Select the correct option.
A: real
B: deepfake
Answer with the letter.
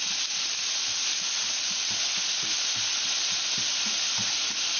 A